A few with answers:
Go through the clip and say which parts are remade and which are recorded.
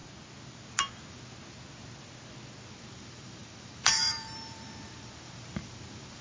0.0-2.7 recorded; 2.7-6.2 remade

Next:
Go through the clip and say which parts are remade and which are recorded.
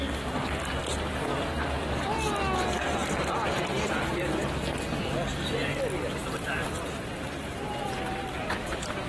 0.0-4.1 recorded; 4.1-4.6 remade; 4.6-6.2 recorded; 6.2-7.2 remade; 7.2-9.1 recorded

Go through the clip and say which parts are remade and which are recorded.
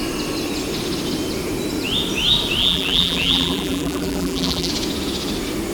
0.0-2.6 recorded; 2.6-4.7 remade; 4.7-5.7 recorded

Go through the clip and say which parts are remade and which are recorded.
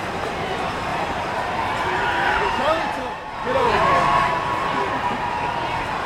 0.0-4.1 remade; 4.1-5.1 recorded; 5.1-6.1 remade